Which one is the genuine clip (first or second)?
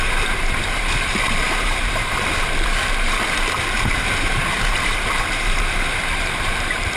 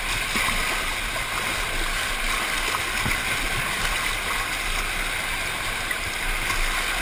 second